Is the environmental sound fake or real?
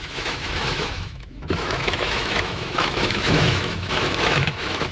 fake